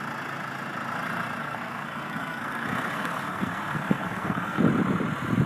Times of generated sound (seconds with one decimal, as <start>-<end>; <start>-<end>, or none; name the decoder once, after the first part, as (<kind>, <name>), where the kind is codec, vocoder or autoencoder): 1.4-4.6 (codec, SNAC)